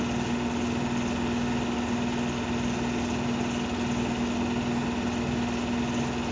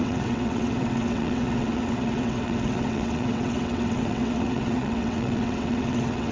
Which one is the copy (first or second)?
second